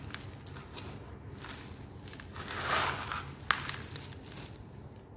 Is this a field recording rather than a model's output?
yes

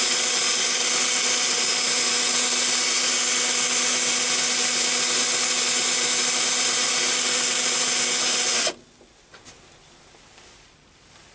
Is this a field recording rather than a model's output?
yes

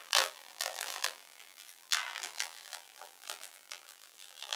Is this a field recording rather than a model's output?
no